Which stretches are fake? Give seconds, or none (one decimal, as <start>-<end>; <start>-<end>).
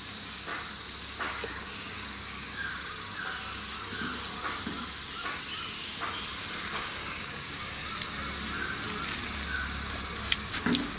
0.0-0.5; 1.5-2.7; 6.6-7.8; 10.5-11.0